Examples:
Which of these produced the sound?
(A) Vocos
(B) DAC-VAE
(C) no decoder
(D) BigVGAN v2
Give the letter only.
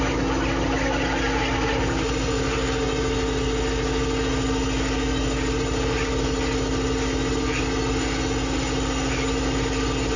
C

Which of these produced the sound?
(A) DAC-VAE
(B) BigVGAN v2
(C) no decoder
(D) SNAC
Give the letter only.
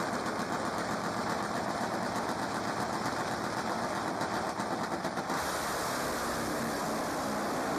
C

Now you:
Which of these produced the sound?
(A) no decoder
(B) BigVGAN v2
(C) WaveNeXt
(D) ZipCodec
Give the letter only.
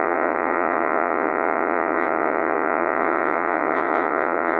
C